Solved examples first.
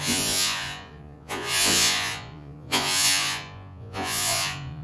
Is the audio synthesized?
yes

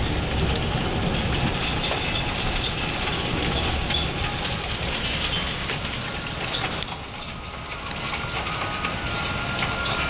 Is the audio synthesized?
no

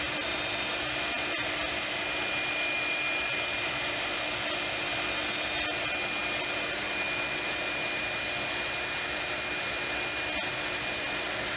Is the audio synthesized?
no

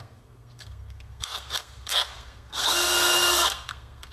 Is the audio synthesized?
yes